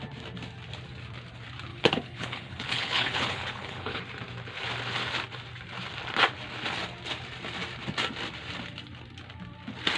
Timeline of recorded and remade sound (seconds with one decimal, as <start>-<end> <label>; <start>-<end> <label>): 0.0-1.7 recorded; 1.7-4.0 remade; 4.0-10.0 recorded